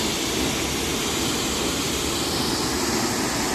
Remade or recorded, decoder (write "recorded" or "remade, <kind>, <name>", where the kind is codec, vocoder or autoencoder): recorded